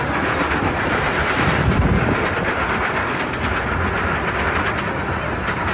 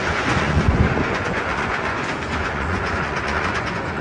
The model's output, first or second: second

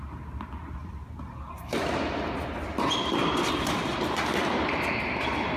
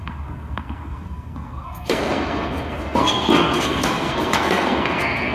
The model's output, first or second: second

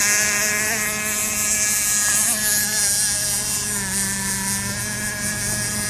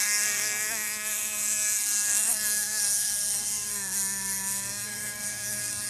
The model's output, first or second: second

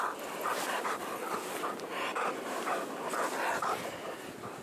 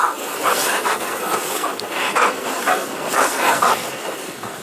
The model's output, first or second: second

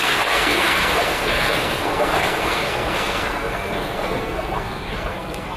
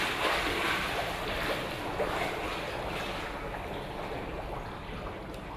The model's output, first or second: first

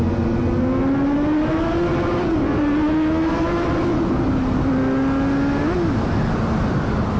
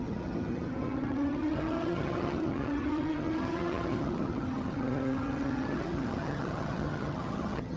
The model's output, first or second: second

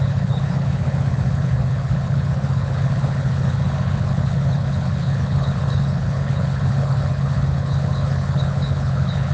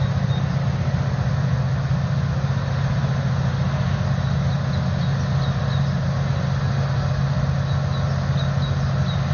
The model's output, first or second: first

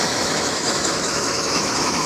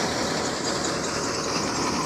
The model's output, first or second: first